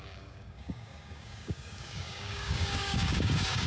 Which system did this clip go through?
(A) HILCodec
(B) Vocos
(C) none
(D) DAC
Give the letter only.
D